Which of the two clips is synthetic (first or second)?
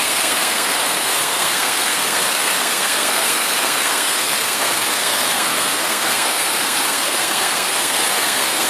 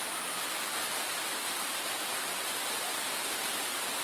first